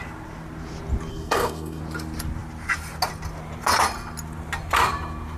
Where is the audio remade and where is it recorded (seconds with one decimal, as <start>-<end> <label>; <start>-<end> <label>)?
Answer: 0.0-1.1 recorded; 1.1-1.8 remade; 1.8-5.4 recorded